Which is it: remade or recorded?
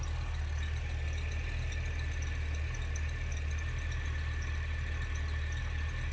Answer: recorded